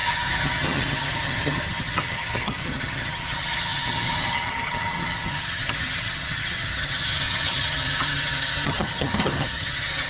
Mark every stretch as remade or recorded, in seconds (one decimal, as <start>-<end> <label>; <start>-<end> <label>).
0.0-10.1 remade